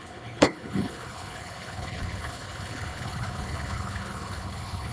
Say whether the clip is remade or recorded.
remade